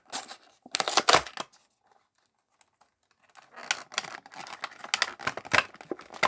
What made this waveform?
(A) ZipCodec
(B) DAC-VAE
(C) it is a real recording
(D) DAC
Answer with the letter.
C